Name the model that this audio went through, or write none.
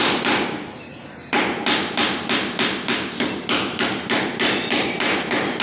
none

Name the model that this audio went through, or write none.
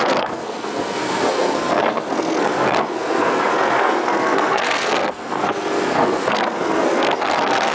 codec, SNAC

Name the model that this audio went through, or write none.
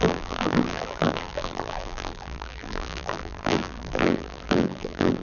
vocoder, BigVGAN v2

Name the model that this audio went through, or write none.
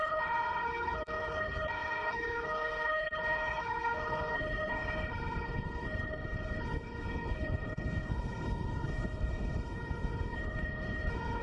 codec, HILCodec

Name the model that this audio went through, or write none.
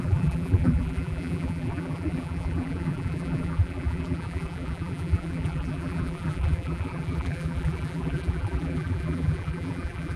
vocoder, BigVGAN v2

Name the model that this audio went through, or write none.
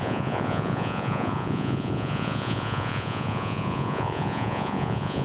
vocoder, Vocos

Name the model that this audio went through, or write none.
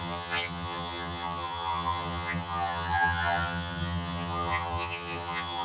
vocoder, HiFi-GAN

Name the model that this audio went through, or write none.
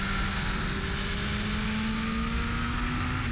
none